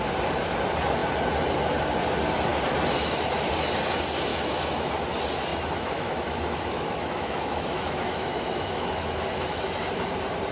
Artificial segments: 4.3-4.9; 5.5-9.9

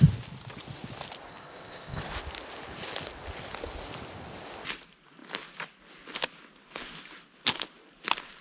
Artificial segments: 1.3-2.0

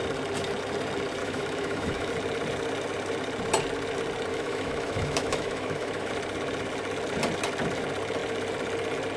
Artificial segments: 1.2-2.1; 4.3-6.1